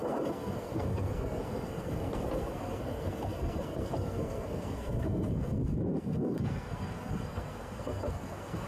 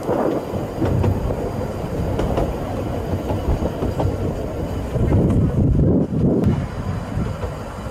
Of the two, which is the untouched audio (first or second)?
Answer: second